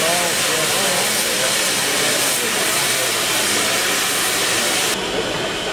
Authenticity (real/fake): real